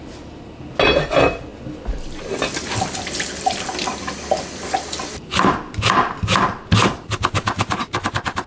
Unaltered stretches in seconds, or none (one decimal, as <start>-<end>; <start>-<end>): 0.0-8.5